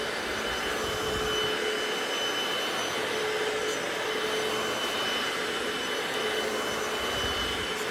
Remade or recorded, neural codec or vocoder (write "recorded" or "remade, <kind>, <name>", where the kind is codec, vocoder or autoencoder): recorded